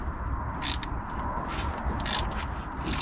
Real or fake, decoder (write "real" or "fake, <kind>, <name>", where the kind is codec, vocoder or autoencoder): real